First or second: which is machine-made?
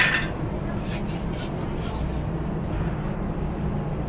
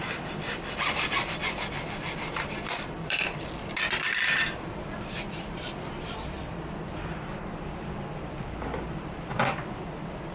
second